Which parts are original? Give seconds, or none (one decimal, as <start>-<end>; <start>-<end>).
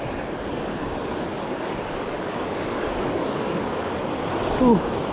0.0-1.3; 4.3-5.1